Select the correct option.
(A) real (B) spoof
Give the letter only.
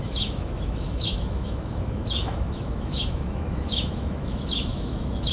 B